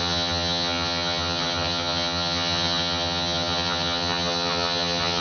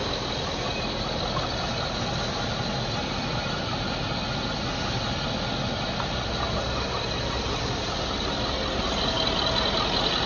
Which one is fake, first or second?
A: first